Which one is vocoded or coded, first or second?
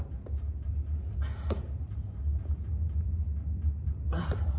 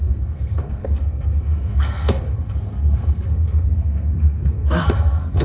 second